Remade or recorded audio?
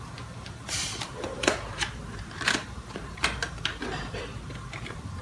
remade